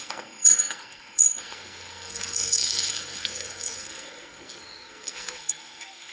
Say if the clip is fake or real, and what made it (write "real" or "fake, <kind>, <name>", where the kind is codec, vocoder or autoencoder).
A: fake, codec, SNAC